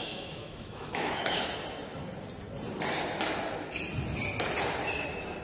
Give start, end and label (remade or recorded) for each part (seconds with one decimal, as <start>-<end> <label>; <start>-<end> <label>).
0.0-1.5 remade; 1.5-5.4 recorded